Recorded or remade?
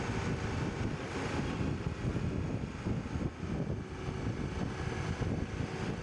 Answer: recorded